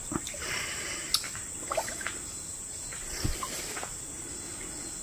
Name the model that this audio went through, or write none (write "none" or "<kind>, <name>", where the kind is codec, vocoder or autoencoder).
none